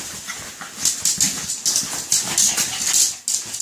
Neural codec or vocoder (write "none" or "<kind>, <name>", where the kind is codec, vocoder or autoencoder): none